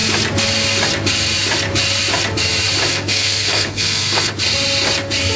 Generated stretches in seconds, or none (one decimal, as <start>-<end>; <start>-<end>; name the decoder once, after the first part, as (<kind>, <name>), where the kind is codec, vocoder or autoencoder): 2.9-4.3 (codec, SNAC)

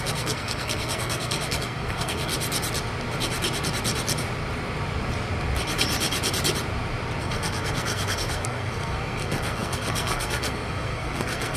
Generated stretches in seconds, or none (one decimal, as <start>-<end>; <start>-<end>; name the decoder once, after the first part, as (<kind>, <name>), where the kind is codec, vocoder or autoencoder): 0.0-2.3 (codec, SNAC); 7.2-11.6

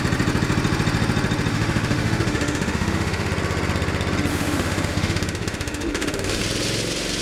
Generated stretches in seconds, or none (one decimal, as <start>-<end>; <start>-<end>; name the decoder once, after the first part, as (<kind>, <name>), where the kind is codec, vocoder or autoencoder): 1.5-3.3 (autoencoder, DAC-VAE); 4.3-6.4

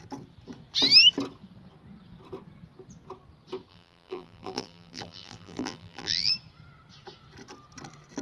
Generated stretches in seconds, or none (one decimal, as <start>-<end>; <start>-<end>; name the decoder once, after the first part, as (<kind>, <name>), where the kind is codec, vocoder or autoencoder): 3.7-6.3 (vocoder, BigVGAN v2)

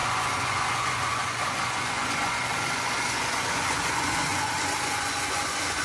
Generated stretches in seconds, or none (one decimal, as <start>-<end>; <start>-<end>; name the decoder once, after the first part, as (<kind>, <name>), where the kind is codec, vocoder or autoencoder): 0.0-5.8 (vocoder, Vocos)

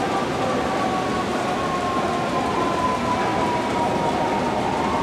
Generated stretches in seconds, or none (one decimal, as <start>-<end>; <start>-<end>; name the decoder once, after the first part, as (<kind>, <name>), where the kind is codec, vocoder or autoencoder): none

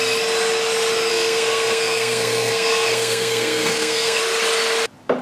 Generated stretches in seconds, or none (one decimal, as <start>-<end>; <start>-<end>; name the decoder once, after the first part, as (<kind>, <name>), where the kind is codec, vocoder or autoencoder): 1.1-4.2 (codec, SNAC)

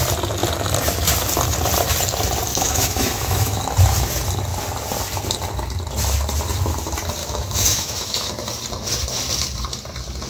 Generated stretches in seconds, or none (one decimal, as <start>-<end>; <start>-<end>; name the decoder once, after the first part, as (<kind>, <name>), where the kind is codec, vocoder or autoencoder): 2.5-3.6 (autoencoder, DAC-VAE); 7.2-8.3